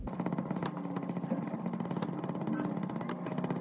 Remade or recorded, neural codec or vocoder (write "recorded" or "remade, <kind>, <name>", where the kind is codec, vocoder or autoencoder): recorded